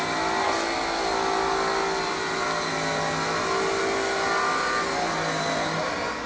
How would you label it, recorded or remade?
recorded